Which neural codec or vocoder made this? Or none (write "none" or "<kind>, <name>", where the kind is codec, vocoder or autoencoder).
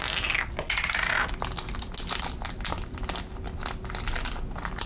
none